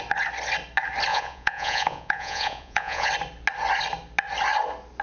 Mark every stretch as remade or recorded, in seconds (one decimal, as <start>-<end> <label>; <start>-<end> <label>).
0.0-1.1 recorded; 1.1-3.1 remade; 3.1-5.0 recorded